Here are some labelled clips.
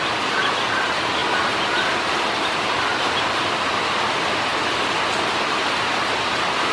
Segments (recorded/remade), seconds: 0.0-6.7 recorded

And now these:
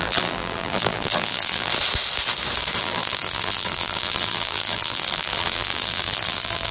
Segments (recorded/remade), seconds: 0.0-1.7 remade; 1.7-2.8 recorded; 2.8-6.7 remade

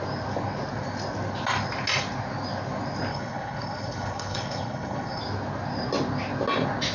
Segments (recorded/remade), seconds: 0.0-3.1 recorded; 3.1-5.2 remade; 5.2-6.9 recorded

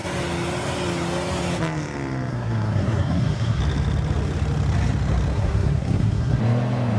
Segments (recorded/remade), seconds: 0.0-2.3 recorded; 2.3-3.6 remade; 3.6-5.3 recorded; 5.3-6.4 remade; 6.4-7.0 recorded

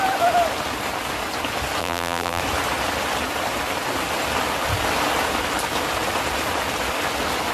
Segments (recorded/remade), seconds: 0.0-1.8 recorded; 1.8-2.4 remade; 2.4-7.5 recorded

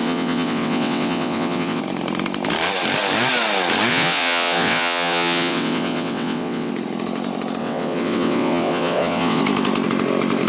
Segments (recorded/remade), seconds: 0.0-1.8 remade; 1.8-3.9 recorded; 3.9-6.7 remade; 6.7-7.6 recorded; 7.6-9.4 remade; 9.4-10.5 recorded

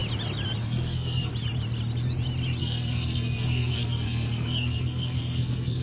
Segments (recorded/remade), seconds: 0.0-0.6 recorded; 0.6-1.3 remade; 1.3-2.6 recorded; 2.6-5.8 remade

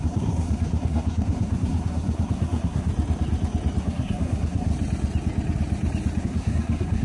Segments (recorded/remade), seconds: 0.0-2.9 remade; 2.9-3.8 recorded; 3.8-4.7 remade; 4.7-6.2 recorded; 6.2-7.0 remade